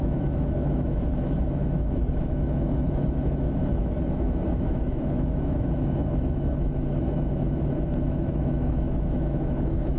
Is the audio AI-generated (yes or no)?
yes